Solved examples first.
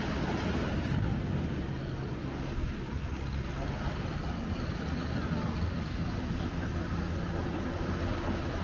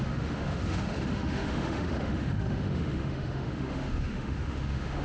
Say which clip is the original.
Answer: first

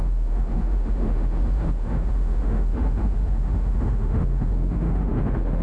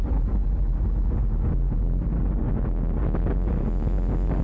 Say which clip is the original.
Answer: second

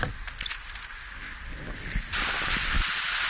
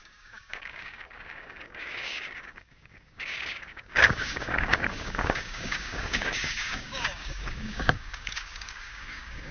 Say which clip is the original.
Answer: first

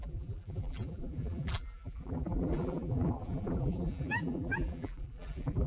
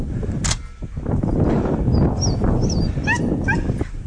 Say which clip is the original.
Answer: second